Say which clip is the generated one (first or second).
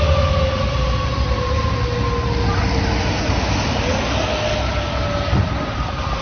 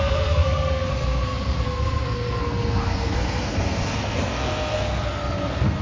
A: second